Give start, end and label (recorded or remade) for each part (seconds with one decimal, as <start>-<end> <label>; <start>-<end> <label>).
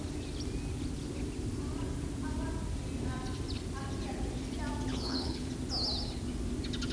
0.0-4.9 recorded; 4.9-5.5 remade; 5.5-6.9 recorded